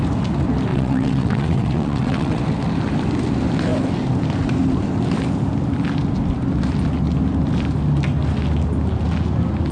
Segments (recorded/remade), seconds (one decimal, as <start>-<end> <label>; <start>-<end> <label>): 0.0-0.7 recorded; 0.7-2.4 remade; 2.4-9.7 recorded